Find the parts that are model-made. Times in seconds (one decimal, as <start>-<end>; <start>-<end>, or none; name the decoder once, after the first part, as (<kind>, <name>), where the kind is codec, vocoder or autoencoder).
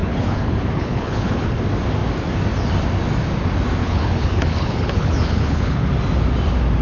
0.0-1.6 (codec, HILCodec); 3.8-5.9